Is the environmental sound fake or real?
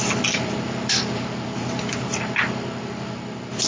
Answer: real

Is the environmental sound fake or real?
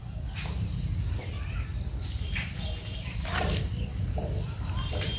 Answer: real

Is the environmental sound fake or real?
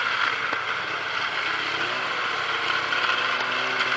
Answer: real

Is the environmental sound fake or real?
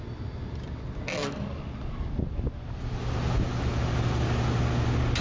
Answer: real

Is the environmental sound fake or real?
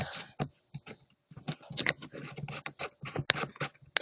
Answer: real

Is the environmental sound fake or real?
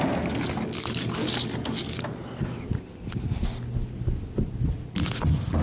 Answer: real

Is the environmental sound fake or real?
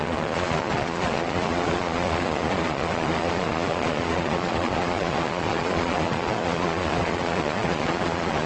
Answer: fake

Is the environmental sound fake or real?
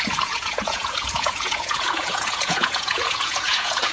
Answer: fake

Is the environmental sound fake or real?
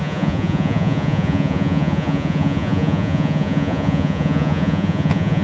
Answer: fake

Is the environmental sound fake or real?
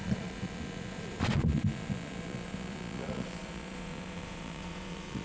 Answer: fake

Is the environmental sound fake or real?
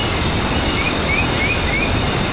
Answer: real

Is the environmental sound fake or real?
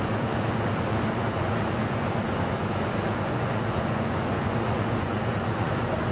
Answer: fake